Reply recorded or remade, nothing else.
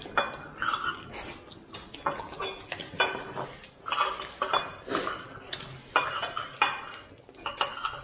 recorded